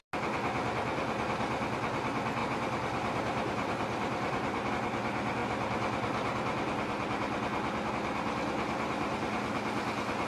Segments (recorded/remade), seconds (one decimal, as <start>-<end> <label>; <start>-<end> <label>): 0.0-2.4 recorded; 2.4-4.7 remade; 4.7-10.3 recorded